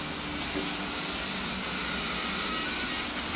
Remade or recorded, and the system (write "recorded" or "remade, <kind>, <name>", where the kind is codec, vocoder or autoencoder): recorded